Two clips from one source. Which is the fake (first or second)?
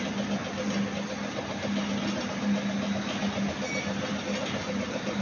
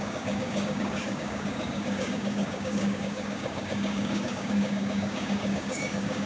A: second